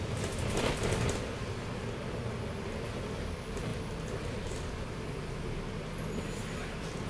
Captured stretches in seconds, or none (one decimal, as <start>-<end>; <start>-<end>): 0.0-7.1